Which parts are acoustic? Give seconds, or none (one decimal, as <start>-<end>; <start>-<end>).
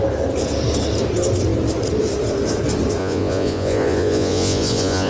0.0-3.0